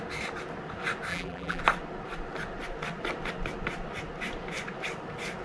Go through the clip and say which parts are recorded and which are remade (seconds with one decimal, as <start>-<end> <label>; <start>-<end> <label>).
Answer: 0.0-1.1 recorded; 1.1-1.6 remade; 1.6-5.4 recorded